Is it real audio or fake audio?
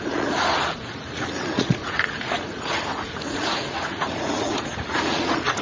fake